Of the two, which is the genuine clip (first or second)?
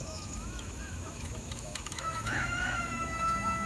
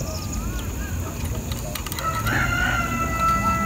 second